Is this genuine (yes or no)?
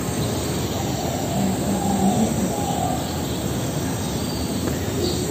yes